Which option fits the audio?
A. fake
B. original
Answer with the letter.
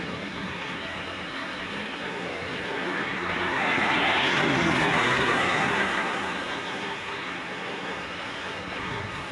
A